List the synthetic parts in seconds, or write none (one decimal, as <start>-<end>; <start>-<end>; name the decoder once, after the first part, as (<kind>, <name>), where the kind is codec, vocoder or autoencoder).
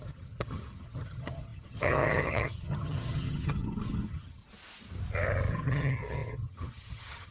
0.0-4.4 (vocoder, HiFi-GAN); 5.5-7.3